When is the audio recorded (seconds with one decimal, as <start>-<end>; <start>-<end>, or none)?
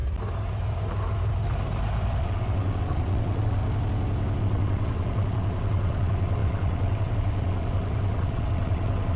0.0-2.2; 3.6-4.4